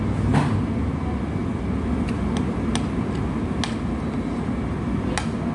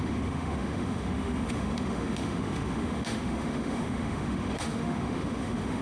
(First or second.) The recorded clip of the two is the first